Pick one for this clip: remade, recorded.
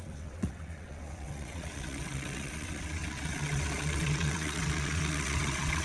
remade